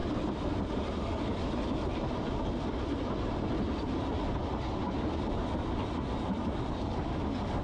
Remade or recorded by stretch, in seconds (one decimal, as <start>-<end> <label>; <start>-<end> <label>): 0.0-7.6 recorded